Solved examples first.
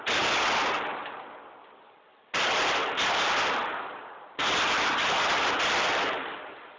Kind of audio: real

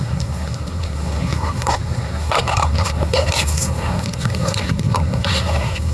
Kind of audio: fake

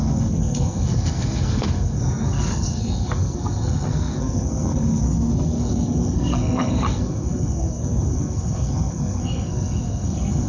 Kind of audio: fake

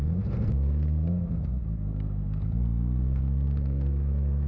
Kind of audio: fake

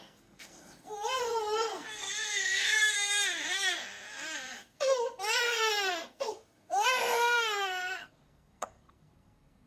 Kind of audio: fake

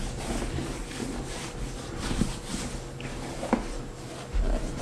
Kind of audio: real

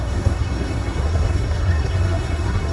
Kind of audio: fake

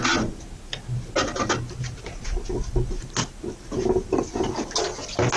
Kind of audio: real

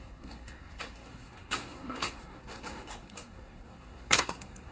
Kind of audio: fake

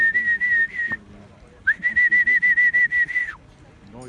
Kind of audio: real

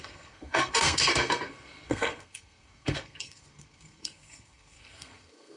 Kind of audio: fake